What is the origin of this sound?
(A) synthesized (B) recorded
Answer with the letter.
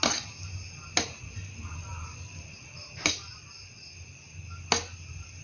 B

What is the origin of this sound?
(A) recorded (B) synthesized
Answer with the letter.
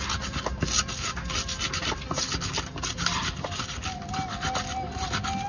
A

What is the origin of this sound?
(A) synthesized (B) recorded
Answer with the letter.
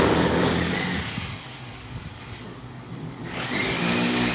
A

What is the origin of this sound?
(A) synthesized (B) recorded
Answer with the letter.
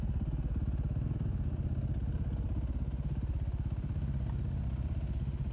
B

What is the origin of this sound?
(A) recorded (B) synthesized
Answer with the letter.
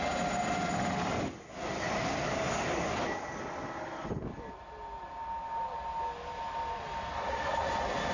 A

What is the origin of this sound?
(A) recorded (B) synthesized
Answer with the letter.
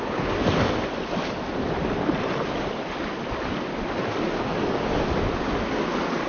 A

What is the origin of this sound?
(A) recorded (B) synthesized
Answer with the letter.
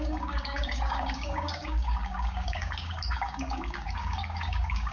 B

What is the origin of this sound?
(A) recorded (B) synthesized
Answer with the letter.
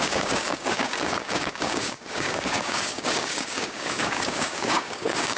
B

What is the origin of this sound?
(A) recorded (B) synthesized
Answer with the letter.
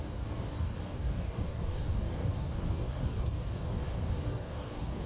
B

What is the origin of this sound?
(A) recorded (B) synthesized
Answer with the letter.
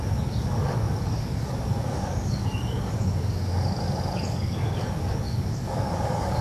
B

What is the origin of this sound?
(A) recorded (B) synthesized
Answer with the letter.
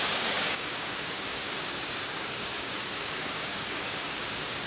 B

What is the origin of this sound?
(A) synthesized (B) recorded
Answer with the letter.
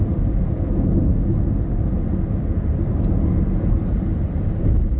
B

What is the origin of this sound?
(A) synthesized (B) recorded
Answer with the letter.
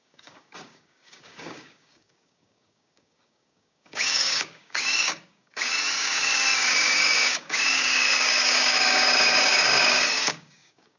A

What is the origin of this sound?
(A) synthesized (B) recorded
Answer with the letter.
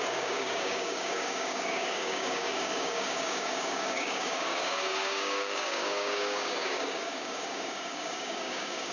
A